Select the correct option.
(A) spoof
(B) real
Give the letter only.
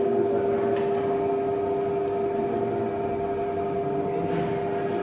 B